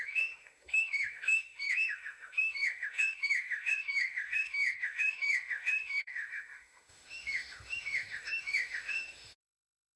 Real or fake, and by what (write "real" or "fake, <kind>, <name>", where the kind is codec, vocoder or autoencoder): fake, autoencoder, DAC-VAE